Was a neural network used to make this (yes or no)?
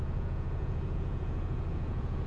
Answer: yes